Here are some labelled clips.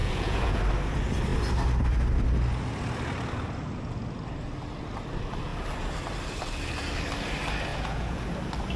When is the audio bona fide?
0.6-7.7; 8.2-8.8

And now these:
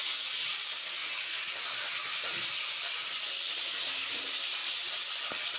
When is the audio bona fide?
0.0-5.6

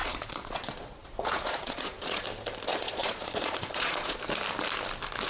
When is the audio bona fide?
2.2-2.7; 4.2-5.3

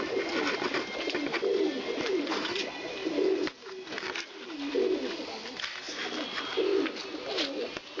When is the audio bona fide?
0.0-8.0